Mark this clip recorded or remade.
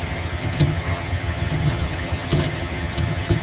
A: remade